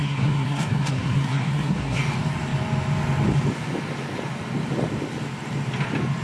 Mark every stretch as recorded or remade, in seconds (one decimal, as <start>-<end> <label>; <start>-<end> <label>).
0.0-2.0 remade; 2.0-6.2 recorded